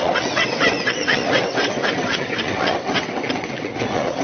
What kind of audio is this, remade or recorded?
remade